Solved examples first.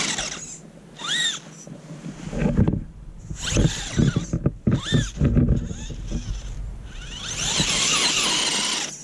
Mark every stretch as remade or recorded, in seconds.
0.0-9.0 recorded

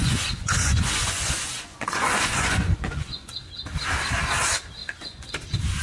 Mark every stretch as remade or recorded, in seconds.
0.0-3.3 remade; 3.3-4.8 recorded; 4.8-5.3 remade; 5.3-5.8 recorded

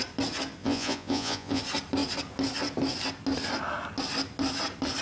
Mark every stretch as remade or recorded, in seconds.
0.0-0.6 recorded; 0.6-1.6 remade; 1.6-5.0 recorded

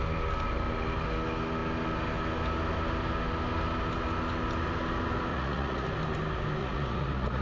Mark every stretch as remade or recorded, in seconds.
0.0-5.3 recorded; 5.3-5.9 remade; 5.9-6.6 recorded; 6.6-7.4 remade

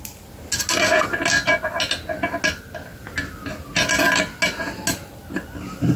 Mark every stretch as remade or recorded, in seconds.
0.0-6.0 recorded

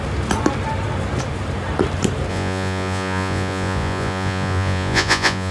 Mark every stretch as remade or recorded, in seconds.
0.0-2.3 recorded; 2.3-5.5 remade

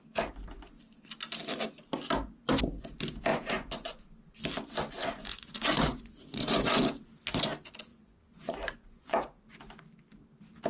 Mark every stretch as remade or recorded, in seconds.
0.0-3.3 recorded; 3.3-4.0 remade; 4.0-5.0 recorded; 5.0-6.8 remade; 6.8-7.9 recorded; 7.9-9.5 remade; 9.5-10.7 recorded

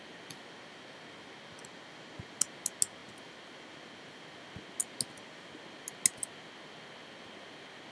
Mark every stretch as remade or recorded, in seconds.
0.0-7.9 recorded